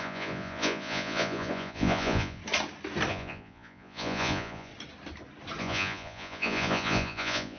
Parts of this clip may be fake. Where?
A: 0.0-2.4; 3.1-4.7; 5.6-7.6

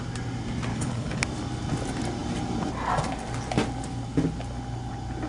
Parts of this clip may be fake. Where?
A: 0.7-1.2

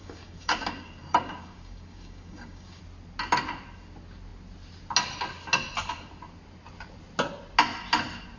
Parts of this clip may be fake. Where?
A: 0.0-2.8

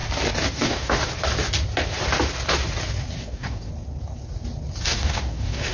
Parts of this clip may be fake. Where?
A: 0.5-1.1; 3.2-3.7; 4.8-5.7

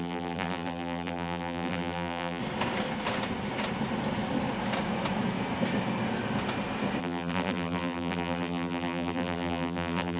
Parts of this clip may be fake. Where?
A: 0.0-2.4; 7.0-10.2

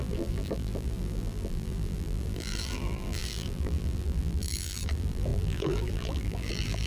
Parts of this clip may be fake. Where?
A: 0.0-6.9